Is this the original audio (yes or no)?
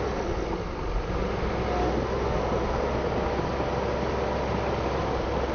yes